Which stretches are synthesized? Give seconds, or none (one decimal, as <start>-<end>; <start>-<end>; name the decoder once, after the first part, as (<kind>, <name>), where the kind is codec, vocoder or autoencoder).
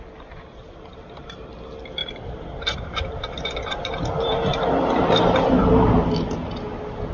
0.9-1.5 (vocoder, BigVGAN v2); 2.0-6.1